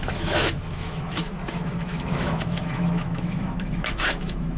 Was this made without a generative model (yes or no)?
no